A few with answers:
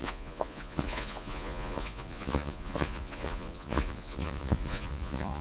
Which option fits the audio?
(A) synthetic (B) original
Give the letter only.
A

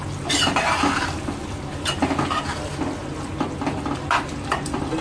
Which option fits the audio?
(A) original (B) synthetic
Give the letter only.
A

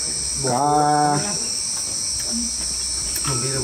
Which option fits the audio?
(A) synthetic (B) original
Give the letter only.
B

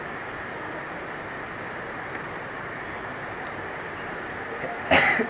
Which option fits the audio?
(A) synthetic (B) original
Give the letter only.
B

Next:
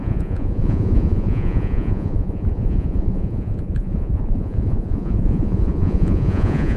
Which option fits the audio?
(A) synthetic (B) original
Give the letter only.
A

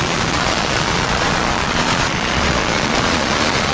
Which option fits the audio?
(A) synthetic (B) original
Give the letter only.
A